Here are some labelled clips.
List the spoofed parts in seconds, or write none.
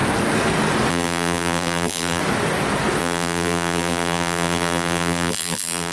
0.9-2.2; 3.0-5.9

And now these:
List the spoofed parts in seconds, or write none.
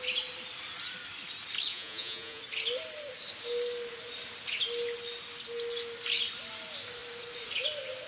1.7-2.4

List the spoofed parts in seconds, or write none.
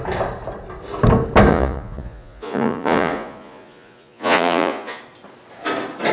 1.5-5.0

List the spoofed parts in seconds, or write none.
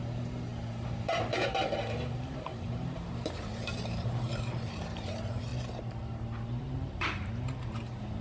0.0-5.5; 6.6-8.2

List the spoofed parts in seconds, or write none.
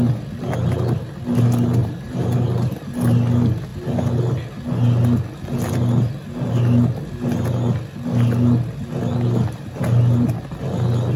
1.8-2.8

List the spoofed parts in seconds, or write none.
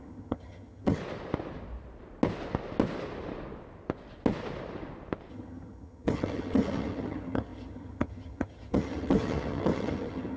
0.0-1.0; 5.3-10.4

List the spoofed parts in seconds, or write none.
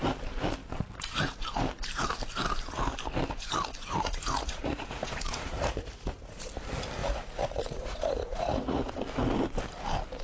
3.9-6.5; 7.0-9.0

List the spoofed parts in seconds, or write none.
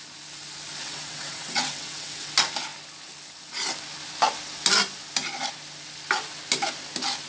0.8-2.3